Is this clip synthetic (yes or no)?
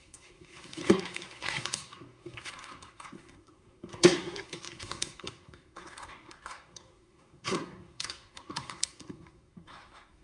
yes